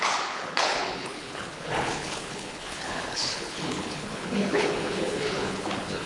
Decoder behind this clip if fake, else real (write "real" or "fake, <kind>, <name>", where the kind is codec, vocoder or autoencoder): fake, codec, HILCodec